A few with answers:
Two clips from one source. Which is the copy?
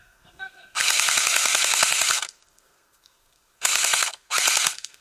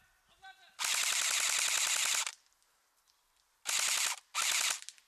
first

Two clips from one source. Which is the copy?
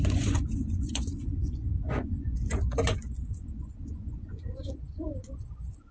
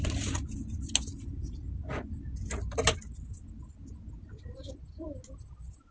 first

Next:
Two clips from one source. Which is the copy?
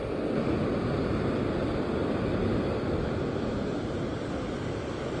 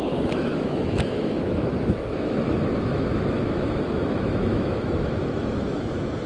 second